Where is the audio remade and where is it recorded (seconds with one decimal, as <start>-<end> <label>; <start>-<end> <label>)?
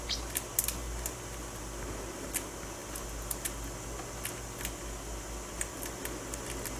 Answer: 0.0-6.8 recorded